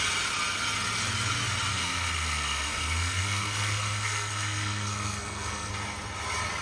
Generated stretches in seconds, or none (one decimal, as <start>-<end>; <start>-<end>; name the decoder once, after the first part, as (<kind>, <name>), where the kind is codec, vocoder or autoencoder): 1.7-5.7 (codec, SNAC)